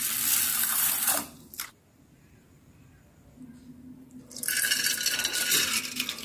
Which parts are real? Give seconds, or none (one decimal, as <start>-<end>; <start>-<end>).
0.0-0.5; 4.2-6.2